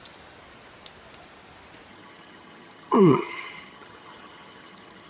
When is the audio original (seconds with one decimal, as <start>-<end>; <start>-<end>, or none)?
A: 0.0-1.9